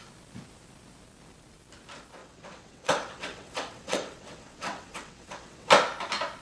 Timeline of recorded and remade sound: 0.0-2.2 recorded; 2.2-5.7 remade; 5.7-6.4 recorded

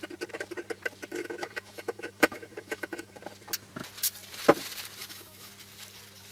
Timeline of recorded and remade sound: 0.0-1.1 recorded; 1.1-3.2 remade; 3.2-5.0 recorded; 5.0-5.5 remade; 5.5-6.3 recorded